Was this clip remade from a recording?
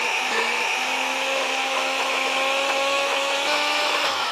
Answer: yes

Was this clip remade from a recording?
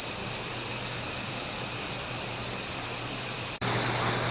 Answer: no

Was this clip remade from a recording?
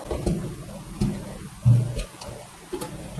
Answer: no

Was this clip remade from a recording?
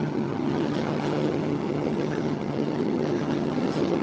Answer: yes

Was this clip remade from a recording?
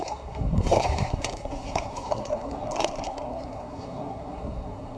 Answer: yes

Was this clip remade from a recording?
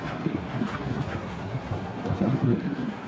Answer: yes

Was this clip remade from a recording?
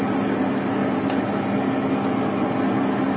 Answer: no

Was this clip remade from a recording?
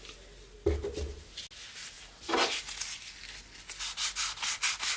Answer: no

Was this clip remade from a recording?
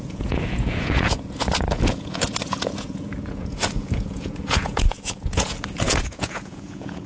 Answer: yes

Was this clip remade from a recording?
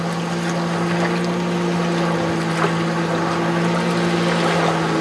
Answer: no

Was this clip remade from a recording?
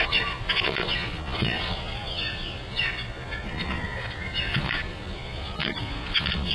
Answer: yes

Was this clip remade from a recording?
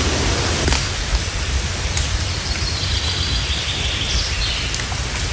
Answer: no